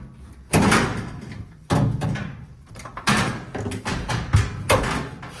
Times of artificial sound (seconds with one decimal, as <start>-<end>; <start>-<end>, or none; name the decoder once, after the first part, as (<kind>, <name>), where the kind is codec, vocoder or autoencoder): 0.9-1.7 (vocoder, BigVGAN v2); 2.2-3.3